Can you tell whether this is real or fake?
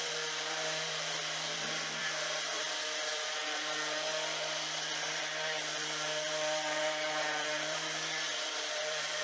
fake